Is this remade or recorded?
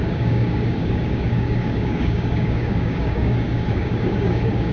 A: remade